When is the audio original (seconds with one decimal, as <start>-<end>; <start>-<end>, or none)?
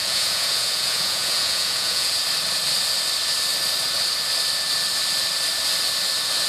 2.2-6.5